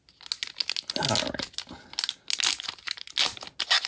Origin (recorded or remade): recorded